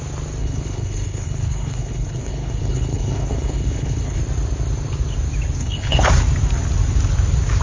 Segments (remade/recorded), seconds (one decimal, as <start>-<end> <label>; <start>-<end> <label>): 0.0-0.4 recorded; 0.4-4.2 remade; 4.2-5.6 recorded; 5.6-6.1 remade; 6.1-7.6 recorded